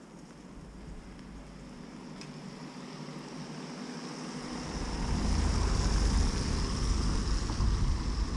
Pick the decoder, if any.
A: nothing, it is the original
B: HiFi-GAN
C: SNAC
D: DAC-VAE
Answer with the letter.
A